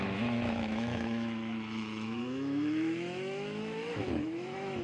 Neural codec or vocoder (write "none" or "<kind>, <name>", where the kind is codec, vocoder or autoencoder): autoencoder, DAC-VAE